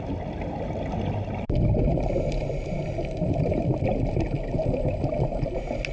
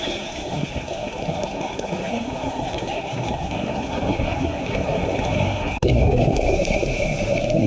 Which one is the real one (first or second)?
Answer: first